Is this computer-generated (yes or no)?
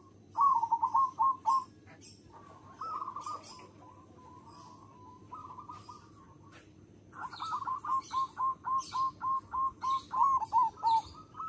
no